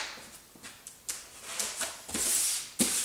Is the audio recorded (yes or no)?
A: yes